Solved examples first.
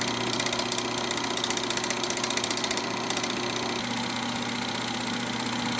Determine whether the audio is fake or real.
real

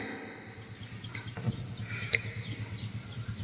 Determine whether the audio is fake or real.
real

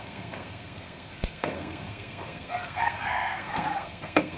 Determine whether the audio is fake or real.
fake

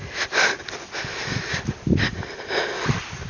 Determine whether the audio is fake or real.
real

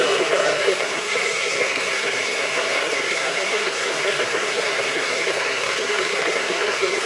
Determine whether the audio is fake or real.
fake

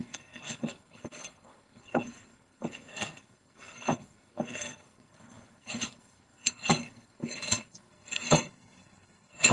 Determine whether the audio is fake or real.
fake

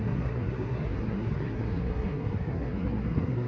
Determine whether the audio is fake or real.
fake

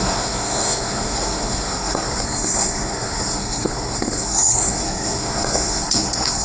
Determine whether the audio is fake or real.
fake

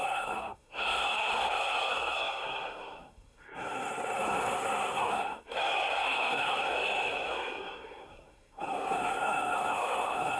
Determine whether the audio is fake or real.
fake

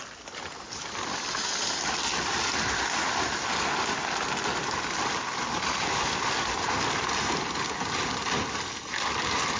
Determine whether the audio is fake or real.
real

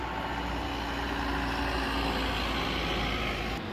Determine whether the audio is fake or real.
real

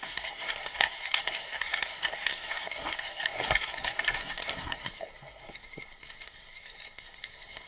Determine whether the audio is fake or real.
fake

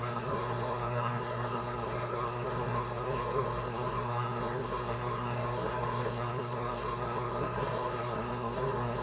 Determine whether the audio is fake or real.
fake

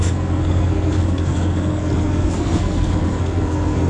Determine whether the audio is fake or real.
fake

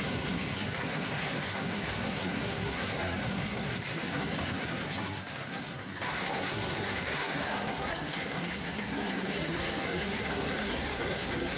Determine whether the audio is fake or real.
fake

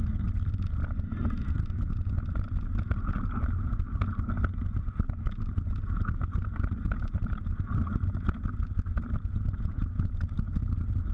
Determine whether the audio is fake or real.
real